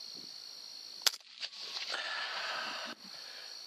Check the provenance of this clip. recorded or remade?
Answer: recorded